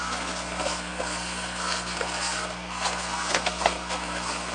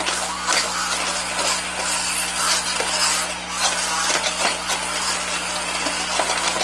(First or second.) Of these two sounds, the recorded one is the second